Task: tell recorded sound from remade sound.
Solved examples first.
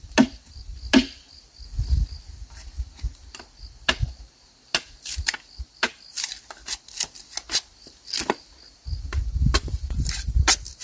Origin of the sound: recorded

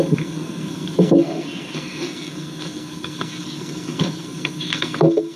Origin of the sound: remade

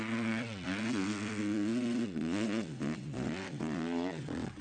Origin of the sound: remade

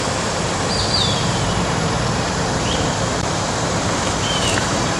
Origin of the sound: remade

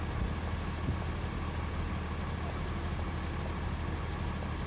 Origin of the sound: recorded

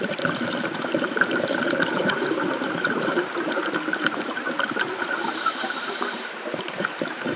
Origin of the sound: remade